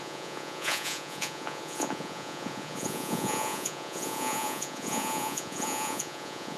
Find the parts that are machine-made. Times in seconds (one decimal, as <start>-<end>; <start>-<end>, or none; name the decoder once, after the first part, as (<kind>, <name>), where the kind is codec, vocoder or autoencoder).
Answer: 0.0-6.6 (vocoder, Vocos)